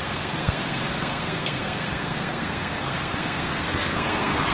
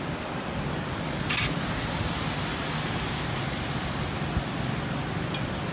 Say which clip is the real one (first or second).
second